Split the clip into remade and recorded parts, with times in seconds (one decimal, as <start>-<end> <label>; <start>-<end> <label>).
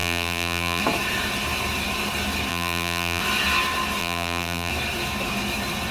0.0-0.8 remade; 0.8-2.5 recorded; 2.5-3.2 remade; 3.2-4.0 recorded; 4.0-4.7 remade; 4.7-5.9 recorded